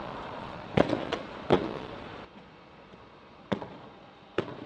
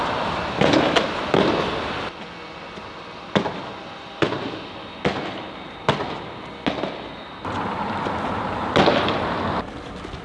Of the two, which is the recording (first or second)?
second